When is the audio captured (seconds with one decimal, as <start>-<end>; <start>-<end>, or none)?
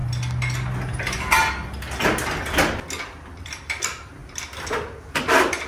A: 0.0-3.4; 4.2-5.2